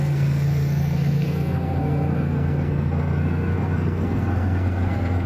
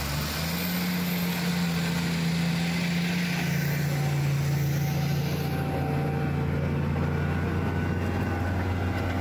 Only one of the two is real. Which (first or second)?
second